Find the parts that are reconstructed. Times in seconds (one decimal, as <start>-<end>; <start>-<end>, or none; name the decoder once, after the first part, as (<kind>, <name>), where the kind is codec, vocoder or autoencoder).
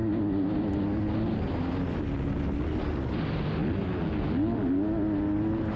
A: none